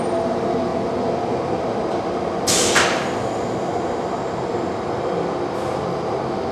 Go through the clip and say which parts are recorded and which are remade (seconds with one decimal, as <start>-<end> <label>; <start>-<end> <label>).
0.0-6.5 recorded